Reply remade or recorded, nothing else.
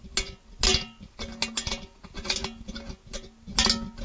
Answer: recorded